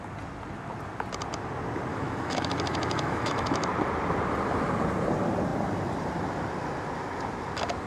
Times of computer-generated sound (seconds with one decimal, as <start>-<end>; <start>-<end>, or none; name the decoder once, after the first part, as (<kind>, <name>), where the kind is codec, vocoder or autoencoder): 1.9-3.7 (autoencoder, DAC-VAE)